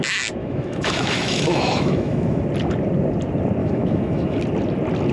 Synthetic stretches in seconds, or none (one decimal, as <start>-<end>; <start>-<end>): 0.4-2.4; 3.6-4.4